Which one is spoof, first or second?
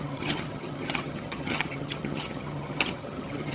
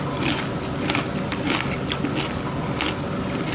first